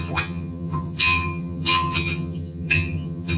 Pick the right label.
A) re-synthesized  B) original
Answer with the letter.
A